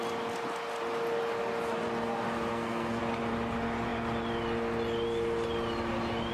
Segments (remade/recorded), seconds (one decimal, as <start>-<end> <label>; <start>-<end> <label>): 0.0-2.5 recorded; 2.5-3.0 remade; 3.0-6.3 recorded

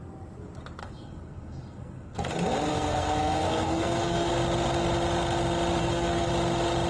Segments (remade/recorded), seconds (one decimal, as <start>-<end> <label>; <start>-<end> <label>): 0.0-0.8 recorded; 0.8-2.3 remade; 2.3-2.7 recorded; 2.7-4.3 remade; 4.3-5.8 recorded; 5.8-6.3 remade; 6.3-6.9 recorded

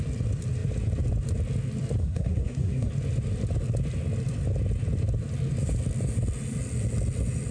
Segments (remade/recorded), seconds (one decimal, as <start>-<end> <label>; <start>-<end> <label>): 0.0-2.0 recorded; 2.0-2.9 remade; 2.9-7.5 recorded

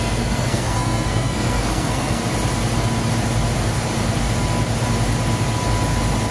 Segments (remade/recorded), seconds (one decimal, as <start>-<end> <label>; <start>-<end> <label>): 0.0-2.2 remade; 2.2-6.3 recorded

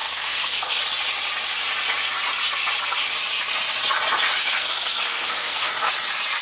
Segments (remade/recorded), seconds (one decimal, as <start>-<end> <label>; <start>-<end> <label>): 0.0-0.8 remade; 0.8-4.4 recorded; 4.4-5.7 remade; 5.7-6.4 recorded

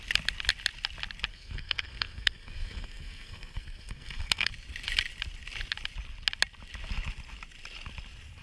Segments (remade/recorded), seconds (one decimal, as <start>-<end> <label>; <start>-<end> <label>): 0.0-1.3 recorded; 1.3-4.5 remade; 4.5-8.4 recorded